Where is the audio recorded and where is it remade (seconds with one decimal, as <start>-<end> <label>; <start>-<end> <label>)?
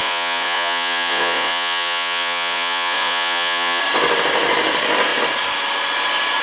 0.0-3.8 remade; 3.8-6.4 recorded